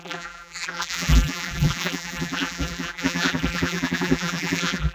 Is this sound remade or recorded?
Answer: remade